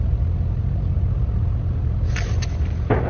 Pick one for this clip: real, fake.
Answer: real